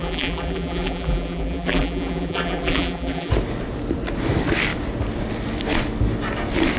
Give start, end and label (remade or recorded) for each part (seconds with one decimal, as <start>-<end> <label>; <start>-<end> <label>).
0.0-3.3 remade; 3.3-6.8 recorded

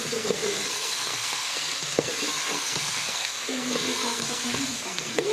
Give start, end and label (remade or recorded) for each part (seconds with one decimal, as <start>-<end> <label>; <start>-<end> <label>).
0.0-5.3 remade

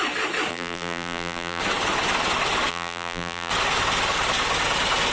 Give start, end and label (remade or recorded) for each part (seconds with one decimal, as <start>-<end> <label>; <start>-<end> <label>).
0.0-0.5 recorded; 0.5-1.6 remade; 1.6-2.7 recorded; 2.7-3.5 remade; 3.5-5.1 recorded

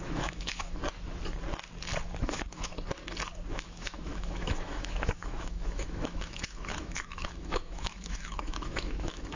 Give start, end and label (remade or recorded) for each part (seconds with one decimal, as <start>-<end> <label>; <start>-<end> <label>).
0.0-0.8 remade; 0.8-2.2 recorded; 2.2-2.7 remade; 2.7-3.5 recorded; 3.5-9.4 remade

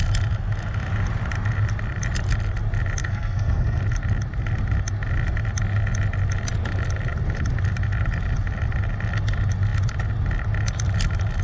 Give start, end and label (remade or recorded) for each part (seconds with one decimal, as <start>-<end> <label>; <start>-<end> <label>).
0.0-3.0 recorded; 3.0-3.8 remade; 3.8-11.4 recorded